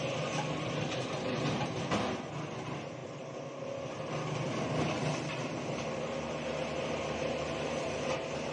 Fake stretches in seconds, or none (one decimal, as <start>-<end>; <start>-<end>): none